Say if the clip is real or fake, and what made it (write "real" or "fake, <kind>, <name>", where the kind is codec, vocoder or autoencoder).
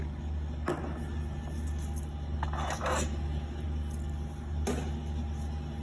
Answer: real